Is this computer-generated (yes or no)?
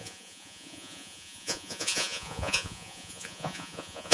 yes